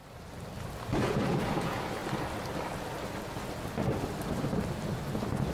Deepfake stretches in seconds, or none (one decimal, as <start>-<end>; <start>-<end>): 1.0-2.0